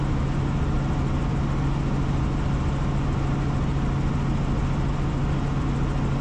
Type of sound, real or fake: real